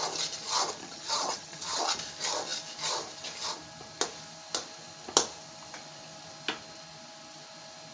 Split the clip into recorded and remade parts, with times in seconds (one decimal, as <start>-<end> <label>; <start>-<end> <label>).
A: 0.0-0.8 recorded; 0.8-1.8 remade; 1.8-7.9 recorded